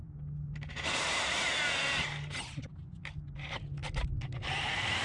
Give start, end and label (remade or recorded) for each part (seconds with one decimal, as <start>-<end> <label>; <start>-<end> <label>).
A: 0.0-5.0 recorded